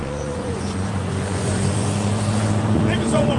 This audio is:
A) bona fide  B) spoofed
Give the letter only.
B